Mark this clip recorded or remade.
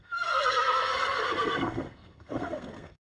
remade